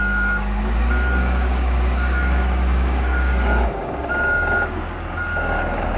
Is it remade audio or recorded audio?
remade